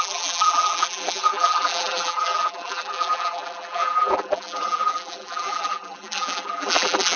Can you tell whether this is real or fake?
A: fake